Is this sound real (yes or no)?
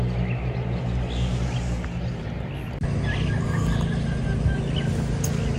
yes